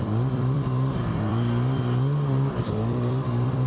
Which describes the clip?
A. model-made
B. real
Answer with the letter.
A